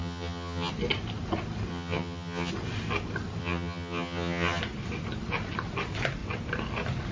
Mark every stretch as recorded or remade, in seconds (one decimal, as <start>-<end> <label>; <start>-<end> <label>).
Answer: 0.0-0.7 remade; 0.7-1.7 recorded; 1.7-2.5 remade; 2.5-3.4 recorded; 3.4-4.6 remade; 4.6-7.1 recorded